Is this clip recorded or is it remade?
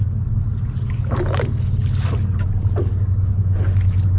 recorded